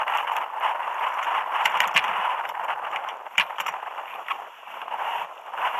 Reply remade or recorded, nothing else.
recorded